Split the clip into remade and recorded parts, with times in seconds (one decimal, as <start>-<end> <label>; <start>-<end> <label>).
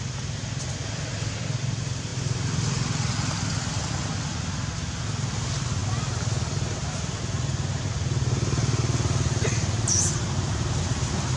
0.0-11.4 recorded